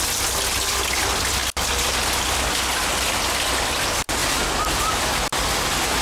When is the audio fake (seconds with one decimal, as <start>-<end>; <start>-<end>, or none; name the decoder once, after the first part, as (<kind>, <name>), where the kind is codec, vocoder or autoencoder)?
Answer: none